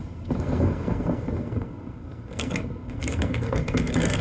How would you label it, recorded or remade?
remade